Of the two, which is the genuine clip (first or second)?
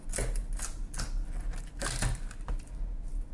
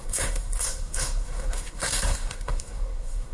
first